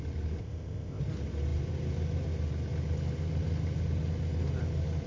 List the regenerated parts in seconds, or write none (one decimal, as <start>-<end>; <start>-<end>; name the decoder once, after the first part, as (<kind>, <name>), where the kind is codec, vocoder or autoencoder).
0.4-1.0 (codec, ZipCodec)